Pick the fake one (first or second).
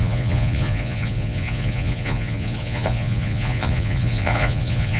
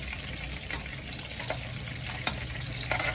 first